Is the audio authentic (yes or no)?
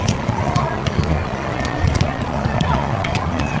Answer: no